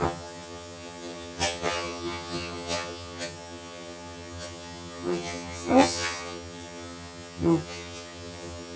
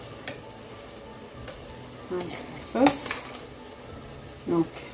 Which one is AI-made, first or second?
first